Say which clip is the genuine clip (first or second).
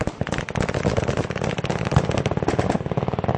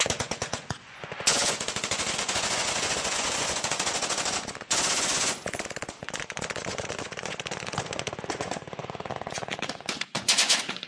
first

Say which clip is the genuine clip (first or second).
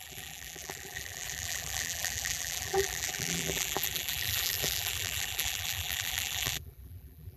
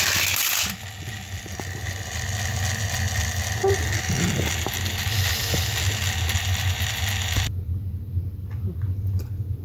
second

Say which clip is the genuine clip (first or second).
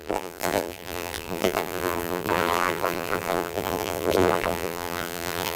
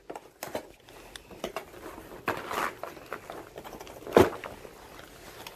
second